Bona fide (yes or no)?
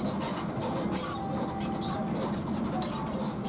yes